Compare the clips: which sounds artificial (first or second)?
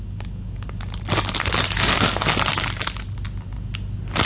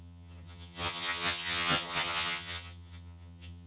second